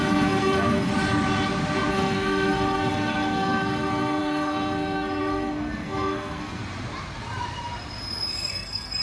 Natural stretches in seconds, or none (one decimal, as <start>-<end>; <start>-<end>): 0.9-1.9; 6.6-8.5